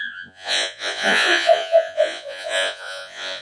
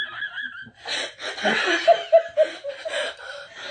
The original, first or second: second